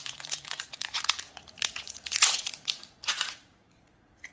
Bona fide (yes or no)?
no